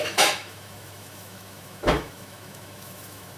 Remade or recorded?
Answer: remade